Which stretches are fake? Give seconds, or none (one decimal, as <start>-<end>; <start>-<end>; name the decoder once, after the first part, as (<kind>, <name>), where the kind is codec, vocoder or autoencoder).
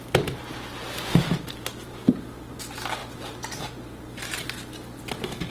none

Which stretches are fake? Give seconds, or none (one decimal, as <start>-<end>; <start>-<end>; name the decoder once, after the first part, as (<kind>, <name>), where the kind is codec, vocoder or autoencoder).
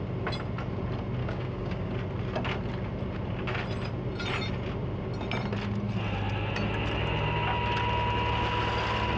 1.2-1.9 (codec, DAC)